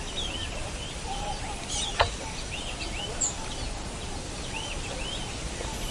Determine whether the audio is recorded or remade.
recorded